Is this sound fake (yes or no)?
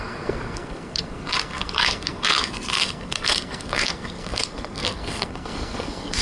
yes